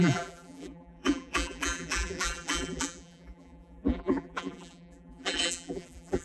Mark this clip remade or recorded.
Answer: remade